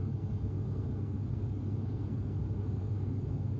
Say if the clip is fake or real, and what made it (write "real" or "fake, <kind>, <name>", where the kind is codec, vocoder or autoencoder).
fake, codec, SNAC